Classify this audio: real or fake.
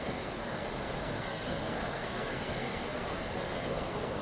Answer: fake